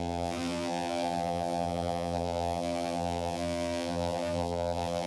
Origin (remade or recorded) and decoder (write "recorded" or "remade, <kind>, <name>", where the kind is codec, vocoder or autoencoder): remade, vocoder, BigVGAN v2